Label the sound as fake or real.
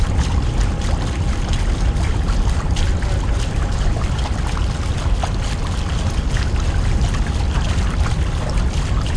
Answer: real